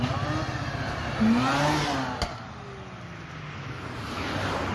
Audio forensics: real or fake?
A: real